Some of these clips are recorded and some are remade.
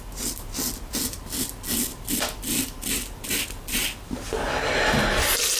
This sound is recorded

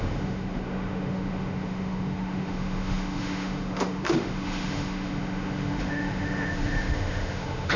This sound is remade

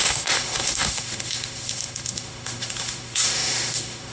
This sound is remade